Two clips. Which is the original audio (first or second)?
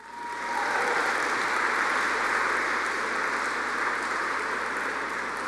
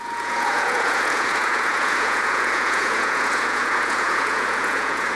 first